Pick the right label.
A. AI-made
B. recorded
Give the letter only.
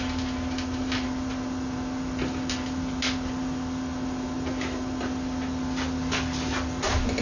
B